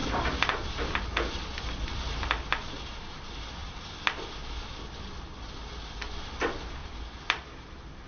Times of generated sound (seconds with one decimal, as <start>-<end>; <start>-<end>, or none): 3.6-4.8; 6.8-7.5